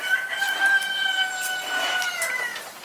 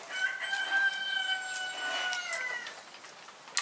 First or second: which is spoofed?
first